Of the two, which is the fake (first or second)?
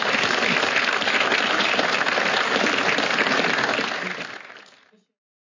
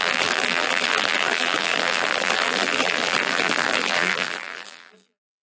second